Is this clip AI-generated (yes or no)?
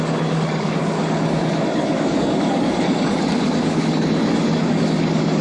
yes